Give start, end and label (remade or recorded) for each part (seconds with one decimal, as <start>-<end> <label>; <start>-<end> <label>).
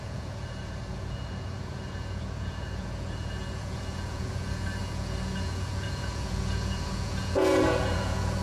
0.0-8.4 remade